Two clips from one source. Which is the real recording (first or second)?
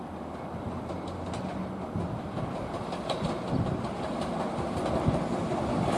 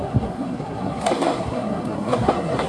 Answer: first